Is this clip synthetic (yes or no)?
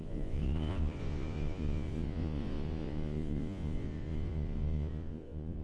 yes